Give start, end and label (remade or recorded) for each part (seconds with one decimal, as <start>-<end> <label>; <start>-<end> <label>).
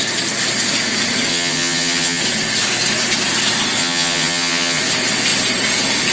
0.0-1.3 recorded; 1.3-2.2 remade; 2.2-3.8 recorded; 3.8-4.8 remade; 4.8-6.1 recorded